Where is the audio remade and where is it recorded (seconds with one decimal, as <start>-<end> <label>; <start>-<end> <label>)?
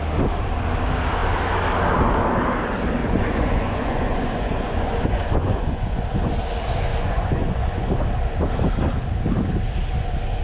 0.0-3.0 recorded; 3.0-6.3 remade; 6.3-6.9 recorded; 6.9-7.9 remade; 7.9-10.4 recorded